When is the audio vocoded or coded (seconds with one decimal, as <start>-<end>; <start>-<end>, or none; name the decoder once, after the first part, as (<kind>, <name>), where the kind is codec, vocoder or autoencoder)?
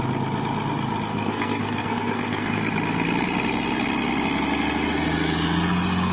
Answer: 1.1-2.6 (codec, SNAC)